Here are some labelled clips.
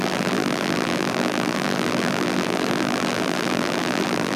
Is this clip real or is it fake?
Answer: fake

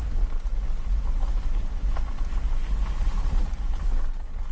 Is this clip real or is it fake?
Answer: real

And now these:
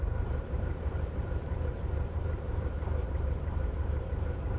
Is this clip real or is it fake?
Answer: fake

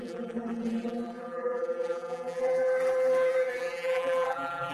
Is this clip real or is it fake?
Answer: fake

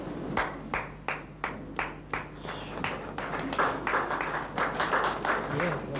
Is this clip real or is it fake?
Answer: real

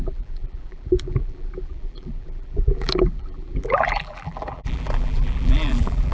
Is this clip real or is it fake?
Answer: fake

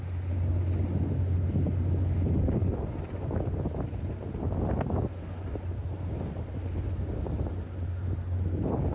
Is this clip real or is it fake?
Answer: real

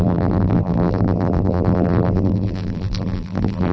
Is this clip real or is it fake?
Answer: fake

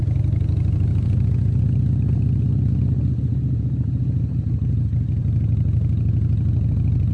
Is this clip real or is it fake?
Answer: real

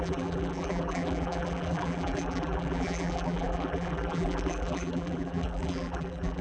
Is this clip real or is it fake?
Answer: fake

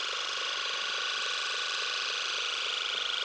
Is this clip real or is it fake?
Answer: fake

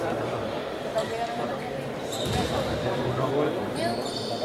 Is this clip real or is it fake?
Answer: real